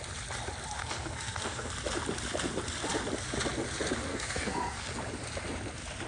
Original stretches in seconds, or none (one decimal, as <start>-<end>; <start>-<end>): 0.0-0.8; 1.7-4.1; 4.9-6.1

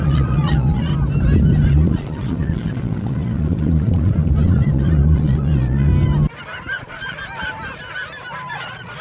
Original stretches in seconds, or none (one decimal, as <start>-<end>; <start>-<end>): 0.9-1.7; 5.9-6.8; 7.2-8.5

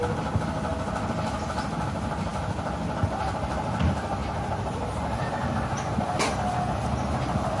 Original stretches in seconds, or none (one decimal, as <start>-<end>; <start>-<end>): 0.0-4.2; 5.2-7.6

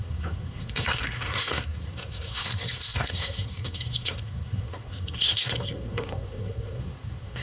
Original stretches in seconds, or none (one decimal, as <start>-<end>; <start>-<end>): none